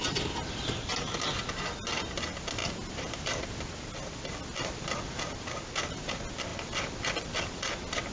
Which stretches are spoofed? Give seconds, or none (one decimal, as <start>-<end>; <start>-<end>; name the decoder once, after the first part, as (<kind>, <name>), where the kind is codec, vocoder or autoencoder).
none